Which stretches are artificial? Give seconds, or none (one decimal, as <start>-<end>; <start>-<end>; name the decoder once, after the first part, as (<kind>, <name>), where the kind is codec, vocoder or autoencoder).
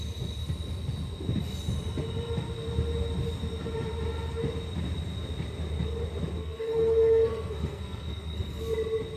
6.4-8.6 (codec, SNAC)